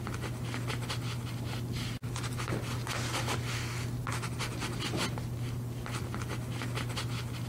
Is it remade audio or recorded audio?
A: recorded